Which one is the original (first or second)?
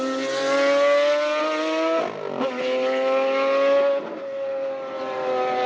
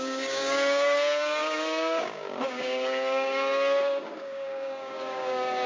first